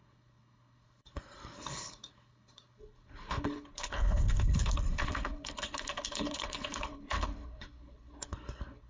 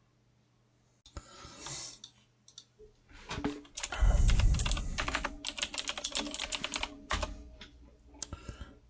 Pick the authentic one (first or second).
second